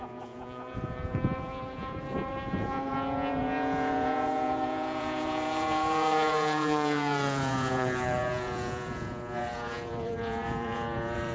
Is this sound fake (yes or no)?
yes